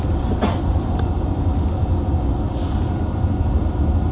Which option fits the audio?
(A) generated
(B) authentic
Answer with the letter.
B